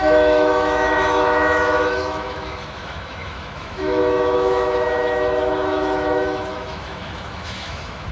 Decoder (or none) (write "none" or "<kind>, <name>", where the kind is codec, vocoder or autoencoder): autoencoder, DAC-VAE